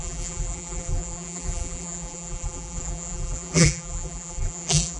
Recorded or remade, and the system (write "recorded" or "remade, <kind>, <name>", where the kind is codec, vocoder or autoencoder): remade, vocoder, BigVGAN v2